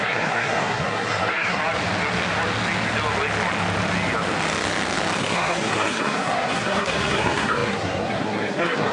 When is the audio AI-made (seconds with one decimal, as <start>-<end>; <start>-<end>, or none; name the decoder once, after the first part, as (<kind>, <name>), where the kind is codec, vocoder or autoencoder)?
0.0-1.6 (codec, SNAC); 5.2-8.9